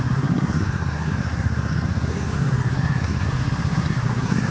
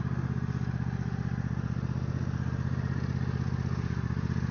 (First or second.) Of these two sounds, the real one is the second